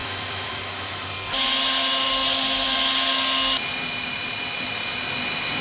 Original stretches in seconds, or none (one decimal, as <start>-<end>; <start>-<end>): 0.6-5.6